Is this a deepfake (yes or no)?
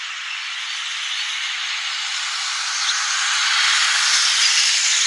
no